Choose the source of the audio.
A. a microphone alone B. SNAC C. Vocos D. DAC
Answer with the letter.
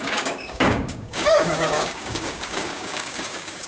D